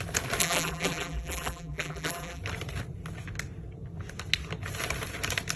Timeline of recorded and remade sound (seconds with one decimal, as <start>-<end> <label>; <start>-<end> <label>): 0.0-0.4 recorded; 0.4-2.4 remade; 2.4-5.6 recorded

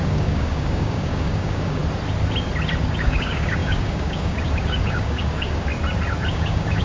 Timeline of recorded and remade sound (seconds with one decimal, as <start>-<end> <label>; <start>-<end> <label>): 0.0-1.8 remade; 1.8-3.0 recorded; 3.0-5.7 remade; 5.7-6.3 recorded; 6.3-6.8 remade

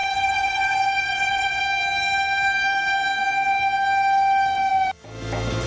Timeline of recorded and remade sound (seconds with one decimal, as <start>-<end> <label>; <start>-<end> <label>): 0.0-1.6 remade; 1.6-5.7 recorded

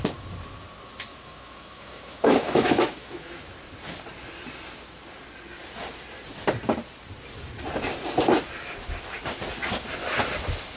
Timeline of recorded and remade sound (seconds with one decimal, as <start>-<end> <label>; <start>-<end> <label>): 0.0-1.1 recorded; 1.1-3.4 remade; 3.4-10.8 recorded

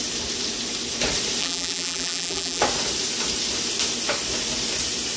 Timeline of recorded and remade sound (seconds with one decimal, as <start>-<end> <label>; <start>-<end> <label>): 0.0-1.4 recorded; 1.4-2.6 remade; 2.6-5.2 recorded

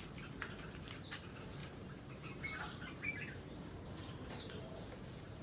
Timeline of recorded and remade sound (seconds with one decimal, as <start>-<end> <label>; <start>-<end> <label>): 0.0-1.6 recorded; 1.6-4.8 remade; 4.8-5.4 recorded

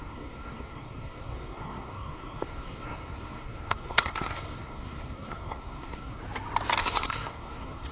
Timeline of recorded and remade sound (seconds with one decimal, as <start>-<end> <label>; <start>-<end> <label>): 0.0-6.2 remade; 6.2-6.8 recorded; 6.8-7.9 remade